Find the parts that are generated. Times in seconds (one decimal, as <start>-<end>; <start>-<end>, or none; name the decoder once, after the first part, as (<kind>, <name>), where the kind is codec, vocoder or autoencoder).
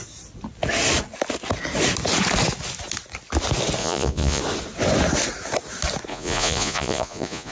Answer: 3.8-4.4 (vocoder, Vocos); 6.1-7.5